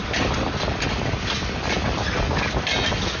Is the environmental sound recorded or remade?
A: remade